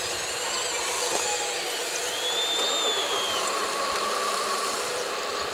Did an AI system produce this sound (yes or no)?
no